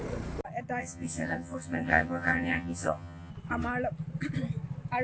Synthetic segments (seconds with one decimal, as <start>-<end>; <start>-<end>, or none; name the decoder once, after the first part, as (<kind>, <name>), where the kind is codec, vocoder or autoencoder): 0.8-3.3 (vocoder, HiFi-GAN)